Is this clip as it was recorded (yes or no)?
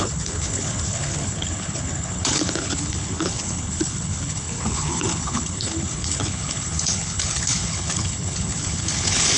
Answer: no